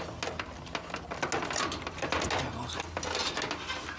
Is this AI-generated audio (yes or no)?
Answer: no